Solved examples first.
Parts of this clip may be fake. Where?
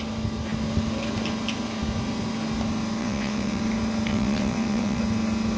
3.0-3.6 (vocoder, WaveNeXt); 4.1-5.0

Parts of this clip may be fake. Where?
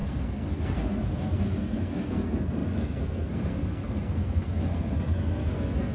0.0-5.9 (codec, SNAC)